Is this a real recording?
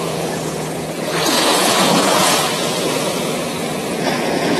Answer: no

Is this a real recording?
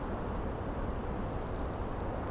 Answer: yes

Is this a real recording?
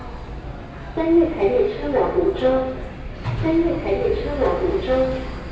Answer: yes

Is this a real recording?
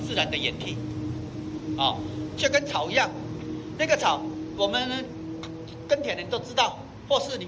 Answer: yes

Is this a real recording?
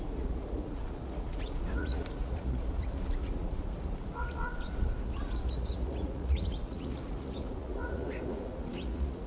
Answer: no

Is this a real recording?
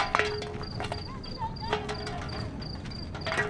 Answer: yes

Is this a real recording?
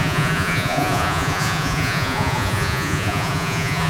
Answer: no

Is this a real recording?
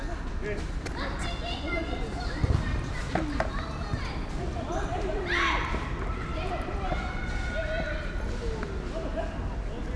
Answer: yes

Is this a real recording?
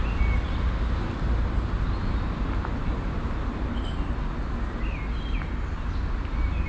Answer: yes